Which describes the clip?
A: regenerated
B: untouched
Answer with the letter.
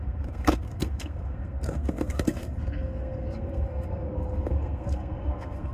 A